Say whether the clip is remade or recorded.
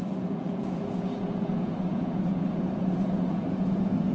remade